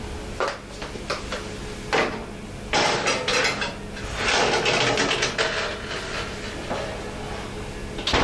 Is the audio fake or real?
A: real